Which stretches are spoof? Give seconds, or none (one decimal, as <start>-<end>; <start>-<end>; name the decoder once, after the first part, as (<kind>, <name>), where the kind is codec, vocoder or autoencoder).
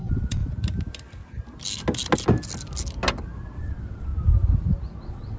0.0-0.4 (vocoder, WaveNeXt); 3.6-4.1; 5.0-5.4